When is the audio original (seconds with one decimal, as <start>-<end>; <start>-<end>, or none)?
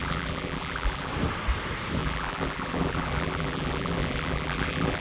1.1-2.0